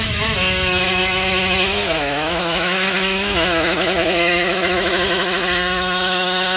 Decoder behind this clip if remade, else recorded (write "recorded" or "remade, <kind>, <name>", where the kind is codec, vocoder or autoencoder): remade, autoencoder, DAC-VAE